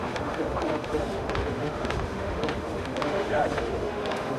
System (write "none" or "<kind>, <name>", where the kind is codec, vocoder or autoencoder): autoencoder, DAC-VAE